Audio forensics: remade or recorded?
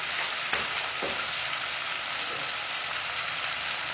recorded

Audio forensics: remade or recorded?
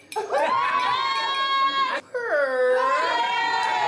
recorded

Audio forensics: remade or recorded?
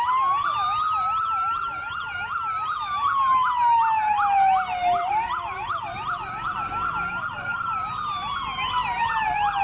recorded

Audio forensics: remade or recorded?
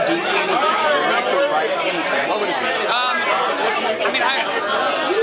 recorded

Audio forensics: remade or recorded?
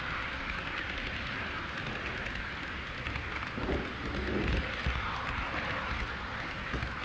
recorded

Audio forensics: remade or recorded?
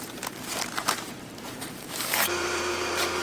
remade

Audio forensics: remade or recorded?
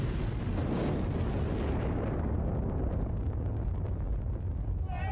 recorded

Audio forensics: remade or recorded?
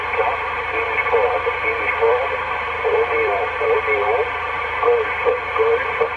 remade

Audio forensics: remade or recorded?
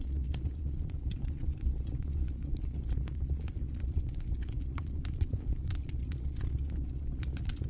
remade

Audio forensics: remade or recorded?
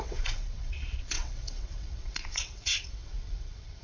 remade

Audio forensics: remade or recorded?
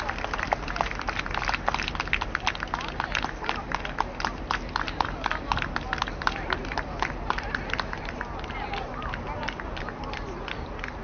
recorded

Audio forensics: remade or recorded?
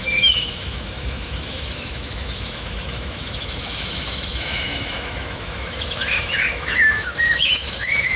remade